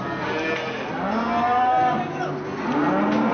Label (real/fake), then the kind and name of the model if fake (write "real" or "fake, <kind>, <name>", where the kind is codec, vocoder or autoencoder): real